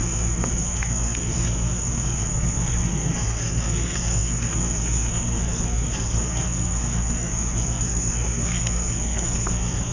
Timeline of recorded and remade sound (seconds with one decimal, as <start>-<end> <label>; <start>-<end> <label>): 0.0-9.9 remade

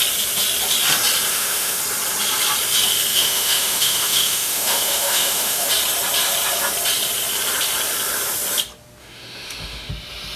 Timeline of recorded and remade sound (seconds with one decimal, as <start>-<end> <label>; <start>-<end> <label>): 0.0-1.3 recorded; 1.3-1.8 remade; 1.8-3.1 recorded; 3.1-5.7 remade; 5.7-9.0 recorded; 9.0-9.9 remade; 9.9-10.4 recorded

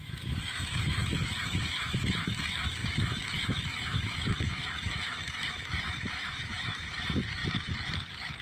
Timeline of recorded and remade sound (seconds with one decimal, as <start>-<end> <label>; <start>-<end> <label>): 0.0-7.4 remade; 7.4-8.4 recorded

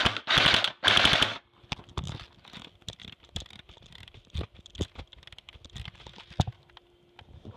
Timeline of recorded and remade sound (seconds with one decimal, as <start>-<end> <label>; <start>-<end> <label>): 0.0-3.0 recorded; 3.0-4.6 remade; 4.6-7.6 recorded

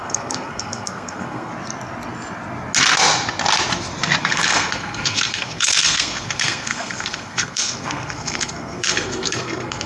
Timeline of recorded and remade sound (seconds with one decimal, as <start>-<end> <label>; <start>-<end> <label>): 0.0-1.5 remade; 1.5-4.2 recorded; 4.2-9.9 remade

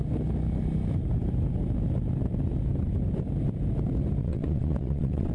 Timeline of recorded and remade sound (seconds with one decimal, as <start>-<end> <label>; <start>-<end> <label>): 0.0-4.2 recorded; 4.2-5.3 remade